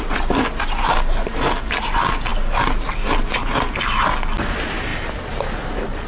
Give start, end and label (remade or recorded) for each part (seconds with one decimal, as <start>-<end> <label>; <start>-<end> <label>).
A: 0.0-6.1 recorded